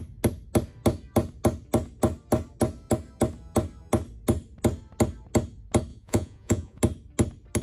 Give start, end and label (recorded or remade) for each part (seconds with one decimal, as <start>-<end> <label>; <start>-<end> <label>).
0.0-5.9 recorded; 5.9-6.8 remade; 6.8-7.6 recorded